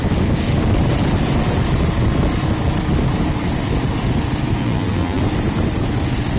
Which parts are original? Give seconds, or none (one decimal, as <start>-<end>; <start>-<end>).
0.0-4.6; 5.2-6.4